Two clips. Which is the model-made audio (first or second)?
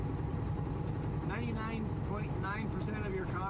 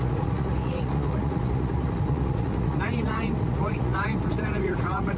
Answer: second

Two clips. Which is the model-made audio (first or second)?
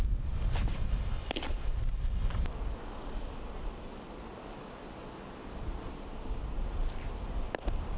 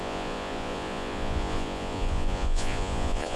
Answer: second